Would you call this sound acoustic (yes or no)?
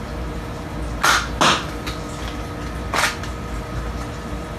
yes